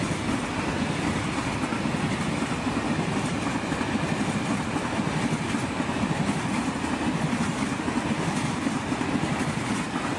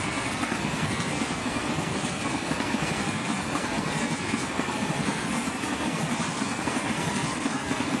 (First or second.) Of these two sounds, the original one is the first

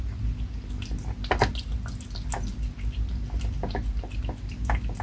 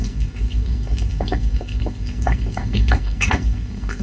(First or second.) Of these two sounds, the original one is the first